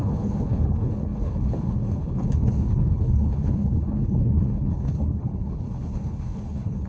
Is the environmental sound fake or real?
fake